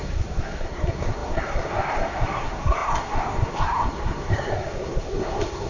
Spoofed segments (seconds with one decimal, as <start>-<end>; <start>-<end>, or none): 0.0-5.7